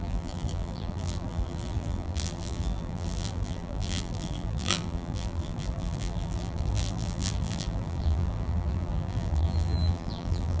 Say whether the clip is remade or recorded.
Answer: remade